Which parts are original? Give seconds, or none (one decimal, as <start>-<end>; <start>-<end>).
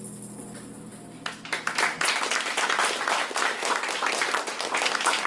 0.0-5.3